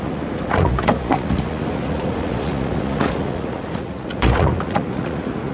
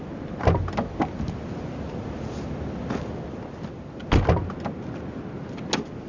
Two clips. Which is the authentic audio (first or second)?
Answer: second